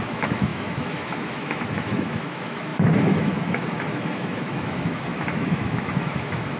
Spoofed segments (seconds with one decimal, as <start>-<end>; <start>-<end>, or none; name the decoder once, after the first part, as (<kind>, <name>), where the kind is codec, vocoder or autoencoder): 0.0-6.6 (autoencoder, DAC-VAE)